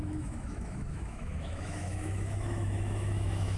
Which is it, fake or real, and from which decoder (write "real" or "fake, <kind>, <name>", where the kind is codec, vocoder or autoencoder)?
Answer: fake, autoencoder, DAC-VAE